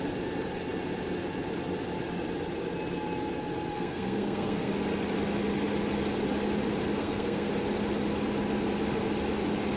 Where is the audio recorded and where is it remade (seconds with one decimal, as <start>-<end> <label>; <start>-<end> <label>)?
0.0-3.8 recorded; 3.8-4.7 remade; 4.7-7.0 recorded; 7.0-7.5 remade; 7.5-9.8 recorded